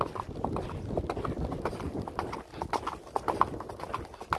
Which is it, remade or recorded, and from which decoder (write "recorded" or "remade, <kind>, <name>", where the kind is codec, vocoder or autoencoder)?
recorded